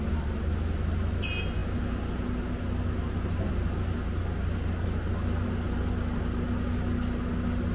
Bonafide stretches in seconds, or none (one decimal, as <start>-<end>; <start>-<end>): 0.0-7.7